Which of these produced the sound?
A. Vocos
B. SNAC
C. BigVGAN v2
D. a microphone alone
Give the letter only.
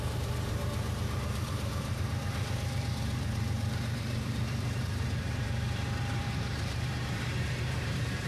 C